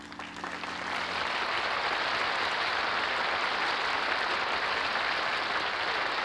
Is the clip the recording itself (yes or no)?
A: yes